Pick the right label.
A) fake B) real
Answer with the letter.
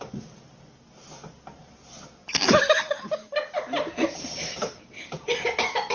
B